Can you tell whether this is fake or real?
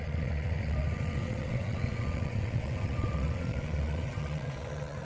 fake